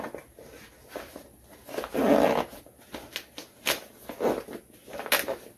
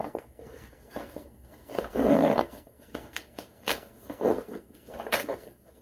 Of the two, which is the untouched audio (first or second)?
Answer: first